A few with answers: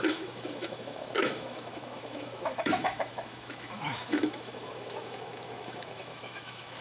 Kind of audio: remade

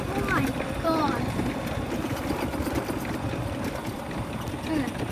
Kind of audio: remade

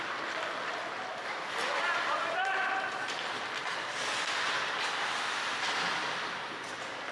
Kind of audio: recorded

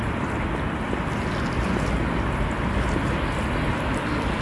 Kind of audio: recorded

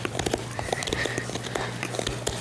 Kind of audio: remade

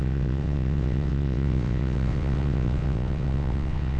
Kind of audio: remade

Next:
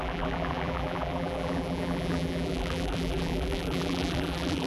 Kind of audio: remade